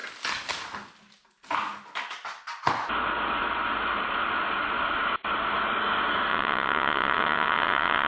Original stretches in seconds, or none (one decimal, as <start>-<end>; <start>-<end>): 0.0-6.3